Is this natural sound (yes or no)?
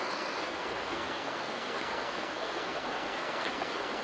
no